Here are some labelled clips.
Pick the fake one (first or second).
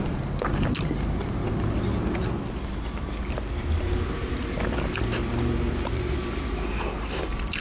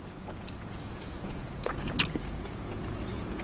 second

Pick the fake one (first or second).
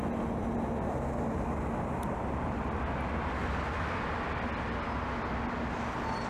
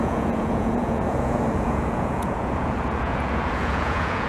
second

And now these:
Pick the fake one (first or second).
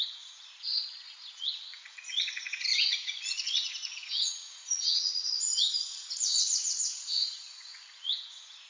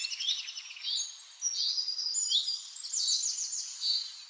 first